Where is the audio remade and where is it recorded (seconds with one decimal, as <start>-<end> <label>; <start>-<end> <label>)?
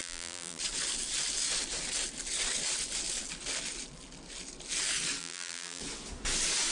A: 0.0-0.6 remade; 0.6-5.2 recorded; 5.2-5.8 remade; 5.8-6.7 recorded